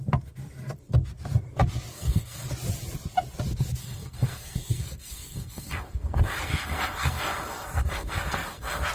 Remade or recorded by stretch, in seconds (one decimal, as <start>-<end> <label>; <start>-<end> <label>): 0.0-1.9 recorded; 1.9-2.5 remade; 2.5-3.8 recorded; 3.8-8.9 remade